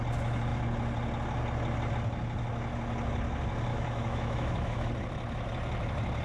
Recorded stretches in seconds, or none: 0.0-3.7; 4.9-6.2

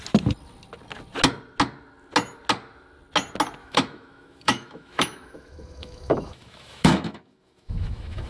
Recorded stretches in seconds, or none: 0.0-3.6